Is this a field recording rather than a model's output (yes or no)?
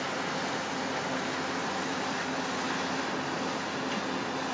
yes